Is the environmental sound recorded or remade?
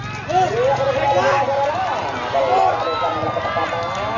recorded